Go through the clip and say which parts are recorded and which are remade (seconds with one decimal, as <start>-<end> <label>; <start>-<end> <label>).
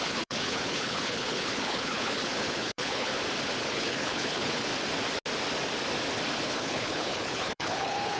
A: 0.0-3.1 remade; 3.1-3.6 recorded; 3.6-4.7 remade; 4.7-6.4 recorded; 6.4-8.2 remade